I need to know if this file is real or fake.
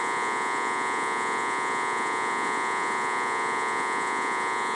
fake